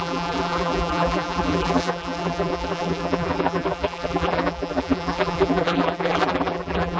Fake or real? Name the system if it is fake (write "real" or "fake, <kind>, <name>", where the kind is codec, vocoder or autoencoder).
fake, vocoder, BigVGAN v2